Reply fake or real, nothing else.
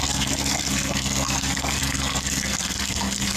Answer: fake